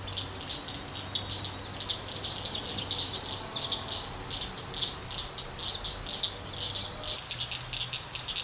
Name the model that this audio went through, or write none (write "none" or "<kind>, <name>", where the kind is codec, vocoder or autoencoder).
none